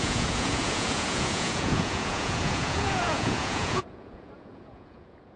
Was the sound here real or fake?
fake